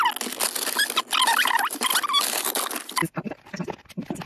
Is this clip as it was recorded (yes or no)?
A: yes